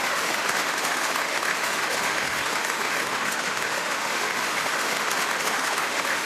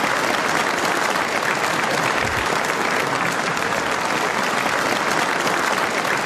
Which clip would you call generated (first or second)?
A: first